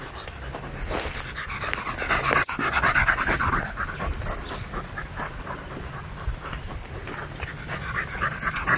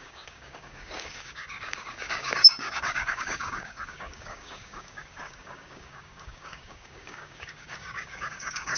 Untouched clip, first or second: first